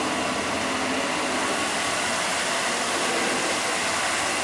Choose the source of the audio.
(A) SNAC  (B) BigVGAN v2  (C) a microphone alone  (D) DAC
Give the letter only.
C